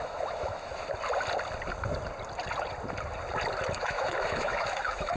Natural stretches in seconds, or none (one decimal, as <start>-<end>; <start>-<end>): 0.7-3.8